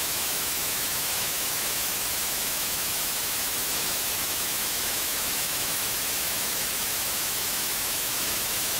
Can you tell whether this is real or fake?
fake